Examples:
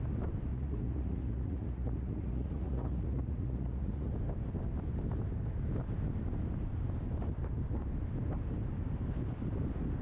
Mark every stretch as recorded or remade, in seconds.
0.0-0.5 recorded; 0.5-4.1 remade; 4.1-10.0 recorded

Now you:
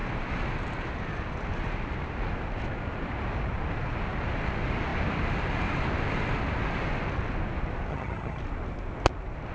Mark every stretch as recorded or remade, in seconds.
0.0-7.9 recorded; 7.9-8.4 remade; 8.4-9.5 recorded

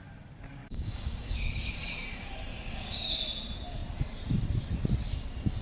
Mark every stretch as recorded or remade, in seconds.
0.0-0.6 recorded; 0.6-1.7 remade; 1.7-2.5 recorded; 2.5-3.2 remade; 3.2-5.6 recorded